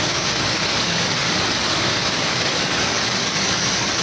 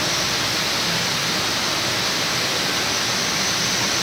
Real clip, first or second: second